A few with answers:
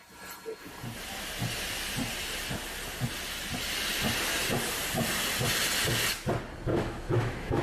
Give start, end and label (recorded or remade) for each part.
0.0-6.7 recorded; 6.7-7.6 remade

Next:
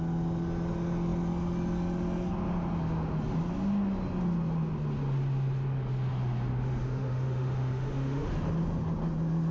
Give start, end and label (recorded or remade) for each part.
0.0-6.5 recorded; 6.5-8.3 remade; 8.3-9.5 recorded

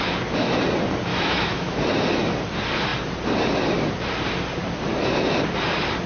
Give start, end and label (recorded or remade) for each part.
0.0-1.1 recorded; 1.1-1.8 remade; 1.8-6.1 recorded